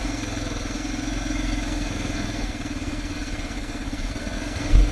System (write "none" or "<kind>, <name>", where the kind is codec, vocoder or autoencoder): codec, SNAC